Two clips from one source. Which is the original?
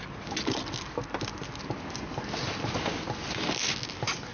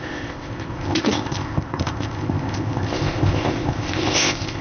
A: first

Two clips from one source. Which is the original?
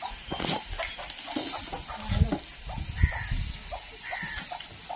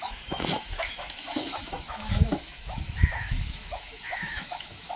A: first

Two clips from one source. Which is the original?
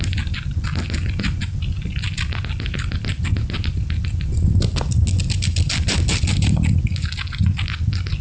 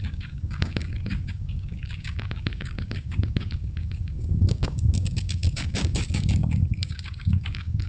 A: first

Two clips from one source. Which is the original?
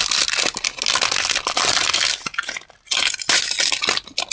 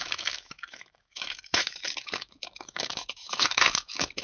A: first